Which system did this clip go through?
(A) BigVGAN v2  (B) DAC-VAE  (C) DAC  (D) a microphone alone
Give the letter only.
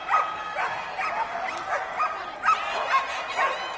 D